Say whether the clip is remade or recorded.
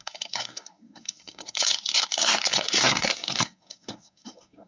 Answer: remade